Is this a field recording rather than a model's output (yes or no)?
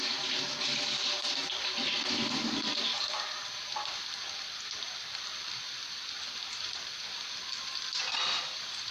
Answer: no